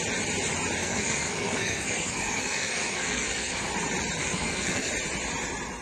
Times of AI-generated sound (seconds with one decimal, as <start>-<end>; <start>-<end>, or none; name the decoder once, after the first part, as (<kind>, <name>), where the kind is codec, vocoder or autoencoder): 0.8-3.7 (codec, SNAC); 4.2-4.9